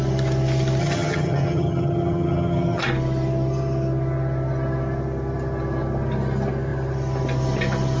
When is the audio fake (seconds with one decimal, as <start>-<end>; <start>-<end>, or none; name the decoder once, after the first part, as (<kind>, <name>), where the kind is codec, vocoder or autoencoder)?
0.8-2.8 (vocoder, HiFi-GAN)